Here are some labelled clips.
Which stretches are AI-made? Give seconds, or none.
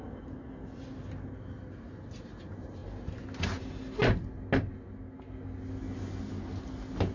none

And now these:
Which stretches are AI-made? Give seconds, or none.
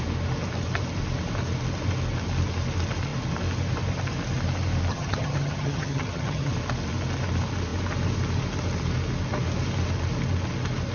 4.9-6.5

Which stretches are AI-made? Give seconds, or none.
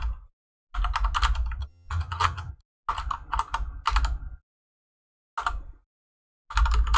1.6-2.5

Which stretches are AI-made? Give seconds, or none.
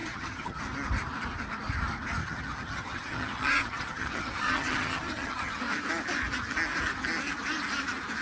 0.0-0.6; 2.2-5.6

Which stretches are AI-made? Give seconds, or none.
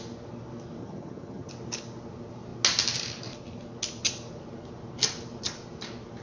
0.8-1.5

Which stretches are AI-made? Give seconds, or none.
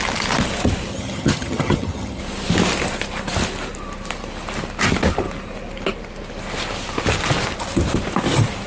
0.9-2.2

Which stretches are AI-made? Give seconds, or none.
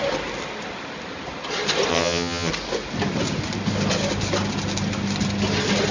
1.9-2.5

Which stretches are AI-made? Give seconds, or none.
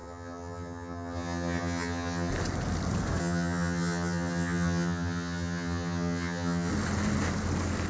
0.0-2.3; 3.2-6.7